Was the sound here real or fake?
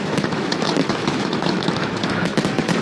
fake